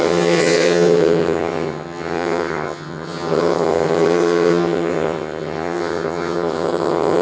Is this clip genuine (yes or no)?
no